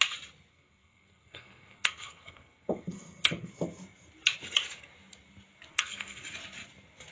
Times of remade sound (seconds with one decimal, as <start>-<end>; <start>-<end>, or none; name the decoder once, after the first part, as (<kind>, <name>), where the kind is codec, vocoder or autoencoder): 0.5-3.5 (codec, SNAC); 5.7-6.2

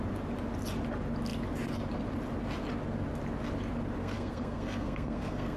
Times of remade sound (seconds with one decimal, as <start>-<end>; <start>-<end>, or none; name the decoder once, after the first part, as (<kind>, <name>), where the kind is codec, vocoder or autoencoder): 4.0-5.6 (codec, SNAC)

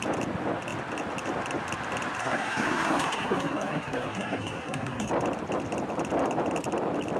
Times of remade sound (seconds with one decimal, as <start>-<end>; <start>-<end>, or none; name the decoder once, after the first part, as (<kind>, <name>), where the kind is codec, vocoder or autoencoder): 2.2-5.1 (codec, SNAC)

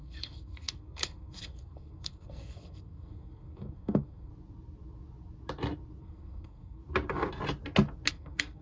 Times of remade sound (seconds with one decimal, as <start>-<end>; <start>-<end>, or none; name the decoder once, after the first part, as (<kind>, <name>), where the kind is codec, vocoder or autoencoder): 0.0-4.3 (codec, SNAC); 6.0-6.8; 8.1-8.6

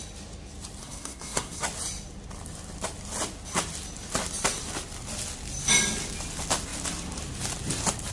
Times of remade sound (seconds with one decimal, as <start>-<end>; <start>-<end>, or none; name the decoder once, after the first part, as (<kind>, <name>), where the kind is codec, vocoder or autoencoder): 0.8-1.6 (codec, SNAC)

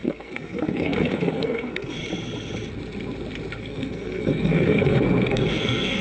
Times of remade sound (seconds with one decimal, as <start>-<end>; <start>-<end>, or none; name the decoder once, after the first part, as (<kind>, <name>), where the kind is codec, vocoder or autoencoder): 0.0-2.0 (codec, SNAC); 3.6-6.0

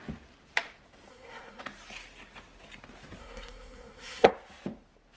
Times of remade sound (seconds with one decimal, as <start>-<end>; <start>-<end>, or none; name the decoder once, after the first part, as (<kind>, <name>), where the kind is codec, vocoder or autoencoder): 1.1-1.6 (codec, SNAC); 3.2-4.3